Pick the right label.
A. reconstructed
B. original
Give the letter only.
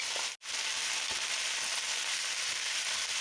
B